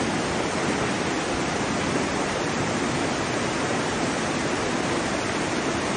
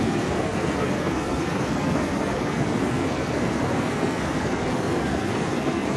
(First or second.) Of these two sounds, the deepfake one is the second